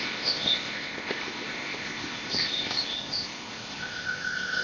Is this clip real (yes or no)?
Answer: no